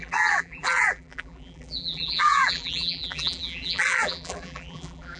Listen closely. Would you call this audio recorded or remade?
remade